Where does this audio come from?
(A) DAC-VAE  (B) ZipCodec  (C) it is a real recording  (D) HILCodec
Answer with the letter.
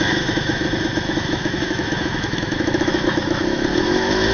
A